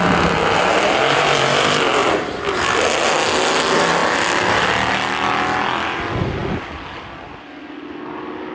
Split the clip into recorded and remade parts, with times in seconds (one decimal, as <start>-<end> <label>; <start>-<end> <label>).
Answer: 0.0-8.5 recorded